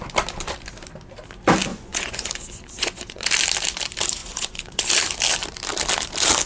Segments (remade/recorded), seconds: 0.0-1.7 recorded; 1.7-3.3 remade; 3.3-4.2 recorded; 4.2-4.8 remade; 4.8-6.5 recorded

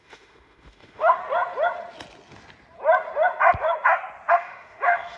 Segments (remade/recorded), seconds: 0.0-1.2 remade; 1.2-4.3 recorded; 4.3-5.2 remade

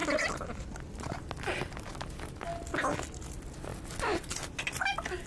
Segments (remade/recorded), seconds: 0.0-5.3 recorded

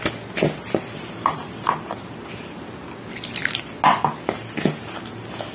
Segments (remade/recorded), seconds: 0.0-5.5 recorded

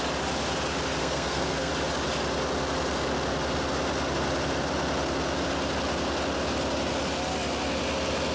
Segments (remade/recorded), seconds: 0.0-1.0 recorded; 1.0-1.7 remade; 1.7-8.3 recorded

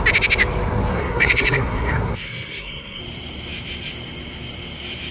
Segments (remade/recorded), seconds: 0.0-0.9 recorded; 0.9-3.0 remade; 3.0-5.1 recorded

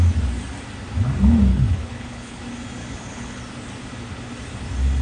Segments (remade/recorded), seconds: 0.0-1.5 recorded; 1.5-2.4 remade; 2.4-2.8 recorded; 2.8-3.4 remade; 3.4-5.0 recorded